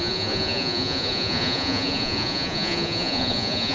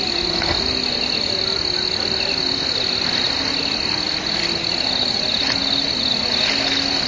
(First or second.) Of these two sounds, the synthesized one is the first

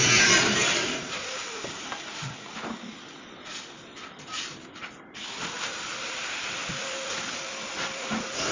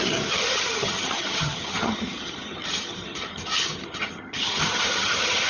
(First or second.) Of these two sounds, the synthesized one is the second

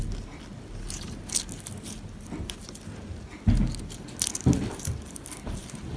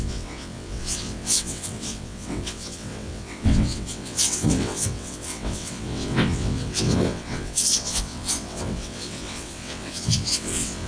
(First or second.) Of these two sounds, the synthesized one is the second